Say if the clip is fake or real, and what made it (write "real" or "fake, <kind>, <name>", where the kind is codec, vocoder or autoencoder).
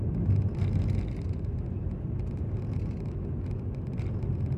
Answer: real